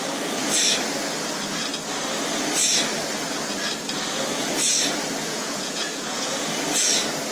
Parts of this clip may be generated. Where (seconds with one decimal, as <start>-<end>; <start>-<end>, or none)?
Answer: 5.2-6.5